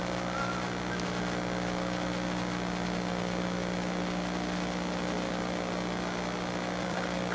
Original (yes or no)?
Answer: yes